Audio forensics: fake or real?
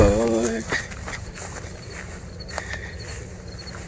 real